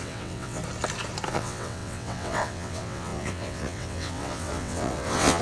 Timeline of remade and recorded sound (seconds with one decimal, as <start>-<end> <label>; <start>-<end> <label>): 0.0-0.6 remade; 0.6-1.3 recorded; 1.3-5.4 remade